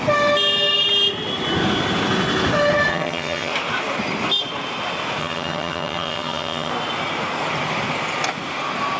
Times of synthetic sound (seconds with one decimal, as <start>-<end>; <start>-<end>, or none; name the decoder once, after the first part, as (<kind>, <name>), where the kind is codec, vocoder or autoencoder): 2.9-3.5 (vocoder, HiFi-GAN); 5.2-6.7